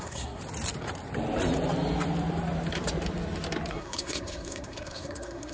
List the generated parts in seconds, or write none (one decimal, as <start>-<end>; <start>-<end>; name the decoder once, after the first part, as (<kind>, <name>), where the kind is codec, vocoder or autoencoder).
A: 0.0-0.4 (codec, SNAC); 3.7-5.5